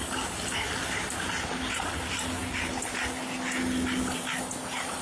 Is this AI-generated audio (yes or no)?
no